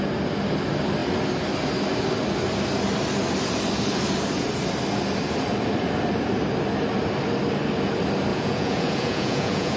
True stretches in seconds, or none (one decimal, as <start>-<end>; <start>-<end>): 0.0-8.3